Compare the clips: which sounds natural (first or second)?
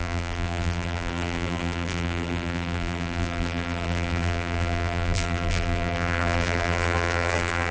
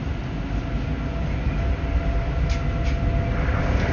second